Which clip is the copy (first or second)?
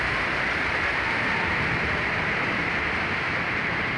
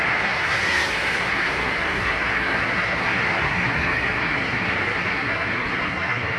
second